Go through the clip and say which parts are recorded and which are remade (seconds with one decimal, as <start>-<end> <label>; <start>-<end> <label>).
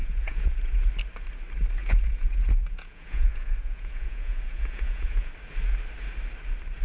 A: 0.0-0.9 remade; 0.9-1.8 recorded; 1.8-5.3 remade; 5.3-6.8 recorded